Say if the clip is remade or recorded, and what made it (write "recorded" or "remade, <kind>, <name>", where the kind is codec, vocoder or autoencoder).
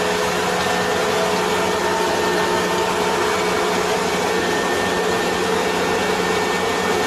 recorded